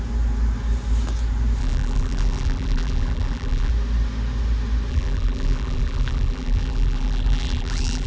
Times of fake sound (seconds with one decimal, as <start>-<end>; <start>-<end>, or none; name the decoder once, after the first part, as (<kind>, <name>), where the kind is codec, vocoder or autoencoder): 1.6-3.7 (vocoder, BigVGAN v2); 4.9-8.1

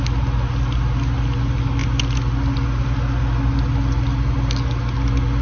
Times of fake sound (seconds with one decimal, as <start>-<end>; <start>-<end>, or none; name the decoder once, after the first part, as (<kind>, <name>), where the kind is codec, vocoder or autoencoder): none

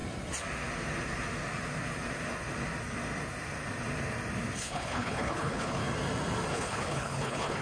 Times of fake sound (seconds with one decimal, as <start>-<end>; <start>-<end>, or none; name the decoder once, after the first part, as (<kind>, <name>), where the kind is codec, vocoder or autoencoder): 4.6-5.8 (codec, HILCodec); 6.5-7.6